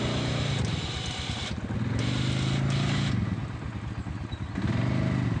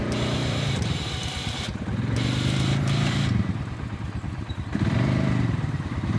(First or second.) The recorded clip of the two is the first